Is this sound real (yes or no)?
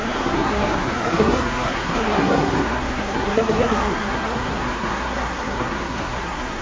no